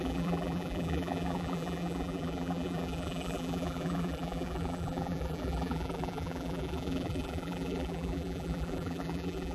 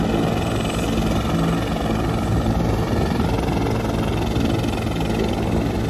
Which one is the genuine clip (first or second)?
second